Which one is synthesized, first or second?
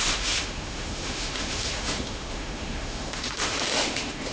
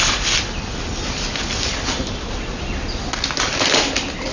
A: first